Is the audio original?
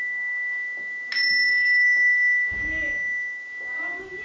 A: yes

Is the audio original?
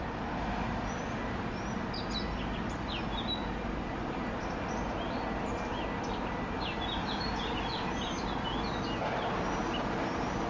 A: yes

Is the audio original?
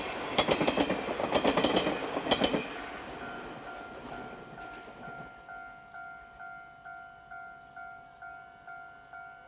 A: yes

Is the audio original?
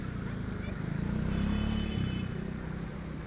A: no